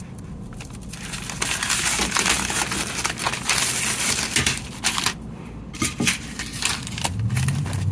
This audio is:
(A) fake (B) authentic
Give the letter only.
B